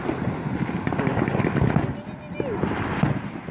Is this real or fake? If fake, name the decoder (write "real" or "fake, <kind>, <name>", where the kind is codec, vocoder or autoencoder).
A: real